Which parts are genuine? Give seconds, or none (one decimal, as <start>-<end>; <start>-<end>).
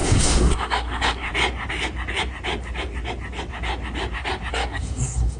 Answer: 1.3-4.5